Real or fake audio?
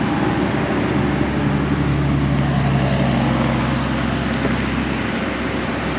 real